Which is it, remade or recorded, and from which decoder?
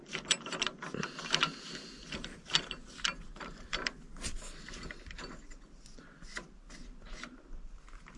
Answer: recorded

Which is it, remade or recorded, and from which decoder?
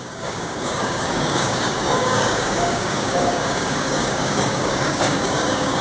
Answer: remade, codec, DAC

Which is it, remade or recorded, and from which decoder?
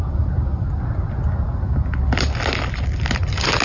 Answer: recorded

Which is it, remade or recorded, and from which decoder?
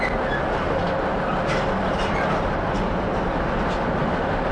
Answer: recorded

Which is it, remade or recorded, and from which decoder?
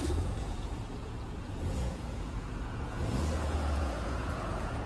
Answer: remade, vocoder, Vocos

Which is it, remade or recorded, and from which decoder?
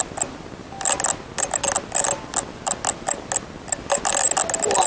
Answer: recorded